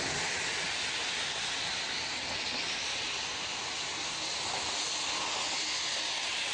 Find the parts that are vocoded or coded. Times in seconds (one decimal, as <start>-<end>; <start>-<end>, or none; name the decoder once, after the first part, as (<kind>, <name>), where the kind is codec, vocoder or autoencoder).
none